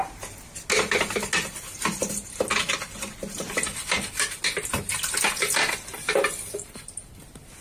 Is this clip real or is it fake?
real